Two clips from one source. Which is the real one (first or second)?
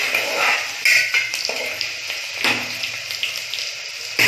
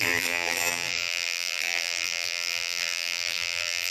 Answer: first